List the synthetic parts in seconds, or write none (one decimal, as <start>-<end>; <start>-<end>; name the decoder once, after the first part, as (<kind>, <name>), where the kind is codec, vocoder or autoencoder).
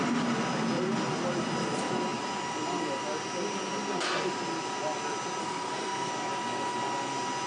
5.4-6.1 (codec, SNAC)